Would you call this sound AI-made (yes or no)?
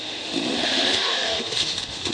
yes